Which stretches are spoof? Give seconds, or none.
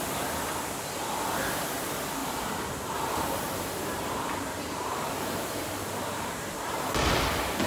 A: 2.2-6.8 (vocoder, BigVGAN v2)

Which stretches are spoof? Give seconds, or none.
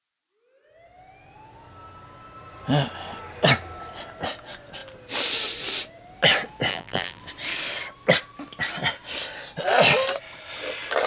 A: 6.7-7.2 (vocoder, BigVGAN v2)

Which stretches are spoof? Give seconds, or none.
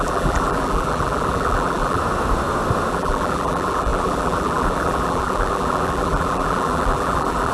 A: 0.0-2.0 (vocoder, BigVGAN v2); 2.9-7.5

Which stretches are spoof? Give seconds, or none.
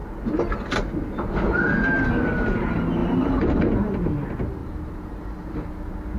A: 3.0-3.6 (vocoder, BigVGAN v2); 4.6-5.7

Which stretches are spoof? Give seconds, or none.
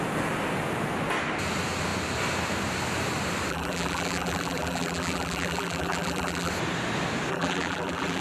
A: 3.5-6.5 (vocoder, BigVGAN v2); 7.3-8.2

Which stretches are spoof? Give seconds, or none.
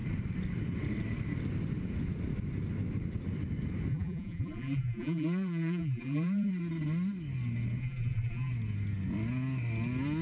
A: 3.9-6.5 (vocoder, BigVGAN v2); 7.8-8.5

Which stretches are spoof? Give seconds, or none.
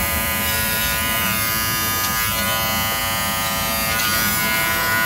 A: 0.0-1.5 (vocoder, BigVGAN v2)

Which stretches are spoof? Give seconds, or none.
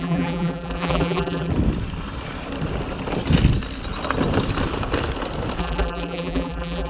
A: 0.0-1.5 (vocoder, BigVGAN v2); 5.6-6.9